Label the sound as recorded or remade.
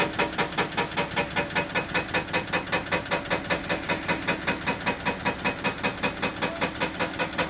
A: recorded